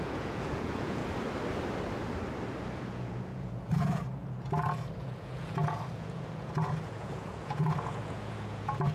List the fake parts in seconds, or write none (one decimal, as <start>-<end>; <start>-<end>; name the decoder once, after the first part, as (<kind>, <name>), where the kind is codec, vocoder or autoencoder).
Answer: 0.0-1.0 (vocoder, Vocos); 2.8-8.9